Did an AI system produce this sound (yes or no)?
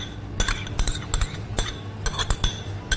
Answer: no